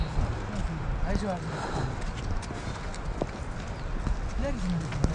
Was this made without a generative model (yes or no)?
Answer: yes